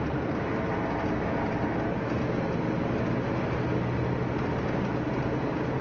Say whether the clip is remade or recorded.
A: recorded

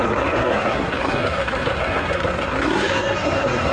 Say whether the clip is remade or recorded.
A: remade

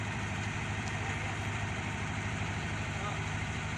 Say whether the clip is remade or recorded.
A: remade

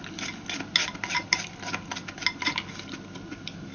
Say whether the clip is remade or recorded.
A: recorded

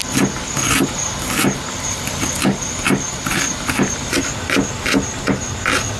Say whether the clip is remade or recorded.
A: recorded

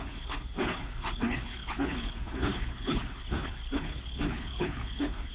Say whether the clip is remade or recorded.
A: remade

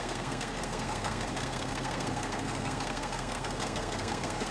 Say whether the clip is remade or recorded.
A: remade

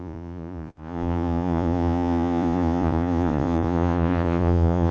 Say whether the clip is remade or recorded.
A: remade